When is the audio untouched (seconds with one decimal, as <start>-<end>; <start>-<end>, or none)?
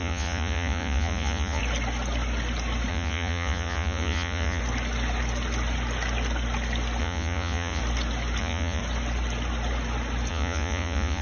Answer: 1.6-2.9; 4.6-7.0; 7.8-8.4; 8.8-10.3